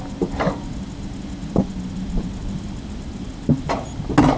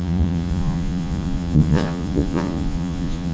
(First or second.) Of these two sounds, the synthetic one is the second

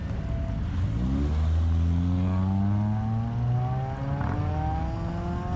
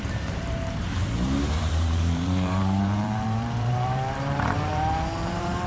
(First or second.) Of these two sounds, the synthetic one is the second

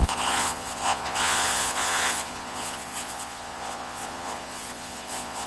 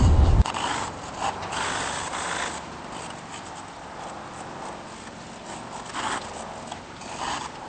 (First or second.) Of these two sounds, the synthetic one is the first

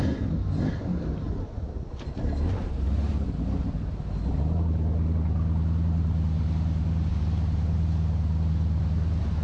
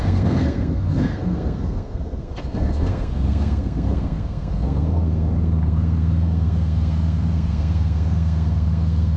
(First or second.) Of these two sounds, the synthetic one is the second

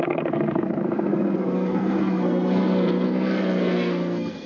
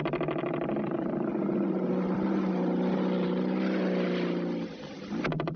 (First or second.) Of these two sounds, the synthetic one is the first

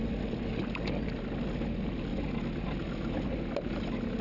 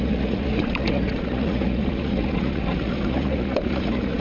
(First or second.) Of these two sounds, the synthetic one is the second